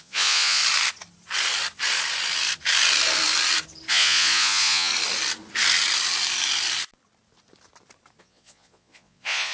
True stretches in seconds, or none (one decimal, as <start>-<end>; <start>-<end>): 0.6-3.9; 4.9-8.2